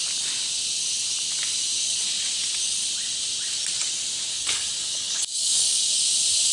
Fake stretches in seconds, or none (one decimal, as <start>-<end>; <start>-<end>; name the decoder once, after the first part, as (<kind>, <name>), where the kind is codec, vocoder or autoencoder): 4.3-6.0 (codec, DAC)